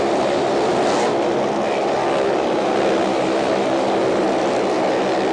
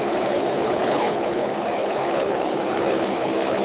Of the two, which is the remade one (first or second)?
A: second